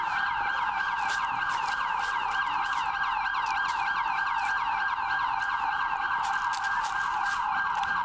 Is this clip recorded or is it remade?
recorded